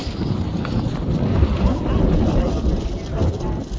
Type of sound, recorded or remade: recorded